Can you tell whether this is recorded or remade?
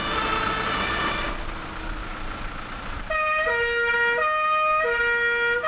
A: recorded